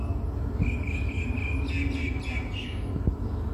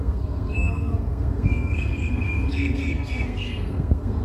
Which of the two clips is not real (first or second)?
second